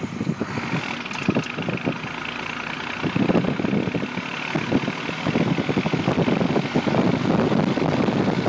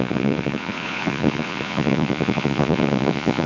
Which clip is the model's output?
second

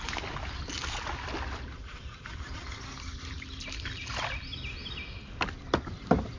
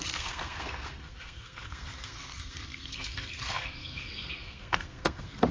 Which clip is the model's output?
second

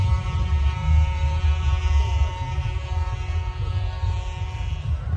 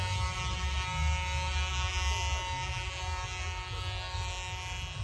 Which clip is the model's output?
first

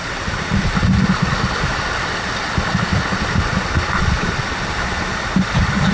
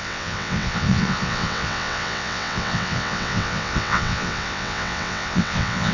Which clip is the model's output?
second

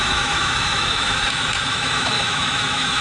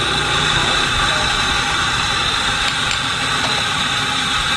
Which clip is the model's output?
first